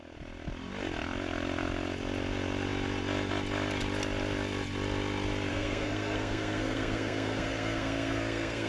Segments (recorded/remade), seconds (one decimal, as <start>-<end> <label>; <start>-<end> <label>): 0.0-5.5 recorded; 5.5-8.7 remade